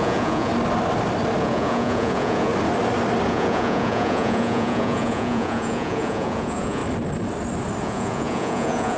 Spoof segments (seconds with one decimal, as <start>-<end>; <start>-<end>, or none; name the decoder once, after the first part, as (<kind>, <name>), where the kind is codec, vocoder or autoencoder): 0.0-0.5 (vocoder, Vocos); 1.4-2.5; 3.3-6.8; 7.8-9.0